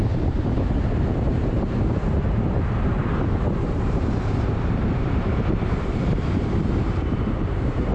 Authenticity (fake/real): fake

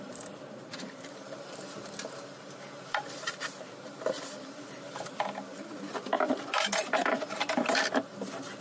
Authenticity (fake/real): fake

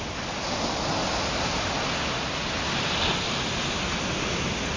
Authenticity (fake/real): real